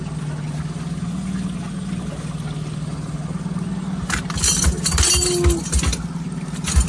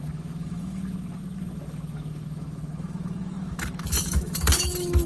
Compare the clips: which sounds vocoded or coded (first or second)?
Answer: second